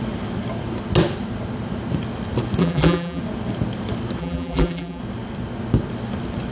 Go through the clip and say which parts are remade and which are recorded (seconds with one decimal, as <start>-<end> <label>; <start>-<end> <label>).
0.0-2.6 recorded; 2.6-3.2 remade; 3.2-4.2 recorded; 4.2-5.0 remade; 5.0-6.5 recorded